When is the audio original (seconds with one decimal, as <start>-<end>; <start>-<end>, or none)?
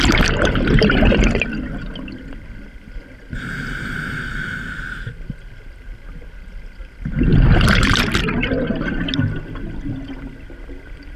0.0-11.2